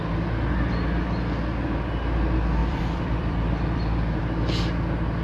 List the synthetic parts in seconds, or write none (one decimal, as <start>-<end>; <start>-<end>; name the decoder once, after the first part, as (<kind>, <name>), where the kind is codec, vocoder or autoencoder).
2.6-4.2 (vocoder, BigVGAN v2)